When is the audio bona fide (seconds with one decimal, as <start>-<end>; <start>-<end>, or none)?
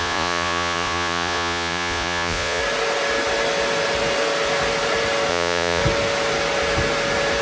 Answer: 2.6-5.3; 5.8-7.4